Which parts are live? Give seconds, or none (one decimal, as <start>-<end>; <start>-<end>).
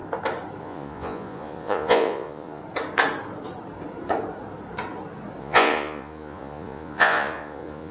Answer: 0.0-0.6; 2.6-5.4